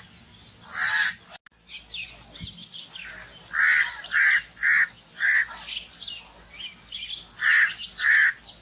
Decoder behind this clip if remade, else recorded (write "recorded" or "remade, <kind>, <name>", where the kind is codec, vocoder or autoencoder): recorded